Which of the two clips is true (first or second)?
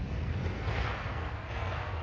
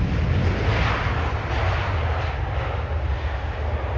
second